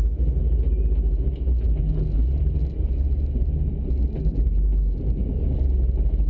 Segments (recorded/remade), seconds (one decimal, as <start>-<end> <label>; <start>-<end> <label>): 0.0-6.3 recorded